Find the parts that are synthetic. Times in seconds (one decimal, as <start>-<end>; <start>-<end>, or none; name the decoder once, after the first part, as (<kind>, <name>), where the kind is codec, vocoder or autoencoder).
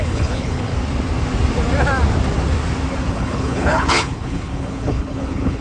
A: 0.0-0.7 (codec, HILCodec); 3.1-5.6